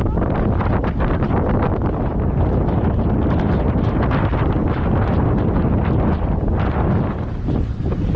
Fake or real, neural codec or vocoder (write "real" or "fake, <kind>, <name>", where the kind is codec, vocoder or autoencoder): real